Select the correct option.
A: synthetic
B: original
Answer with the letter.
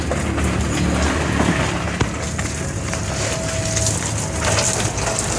B